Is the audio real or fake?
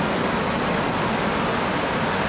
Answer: real